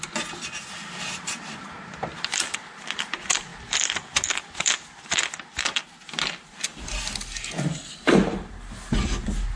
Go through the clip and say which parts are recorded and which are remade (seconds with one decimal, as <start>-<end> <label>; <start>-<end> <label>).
0.0-9.6 recorded